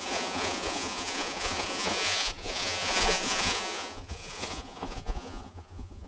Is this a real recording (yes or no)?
no